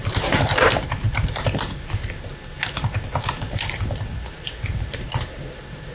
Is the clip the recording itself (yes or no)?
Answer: no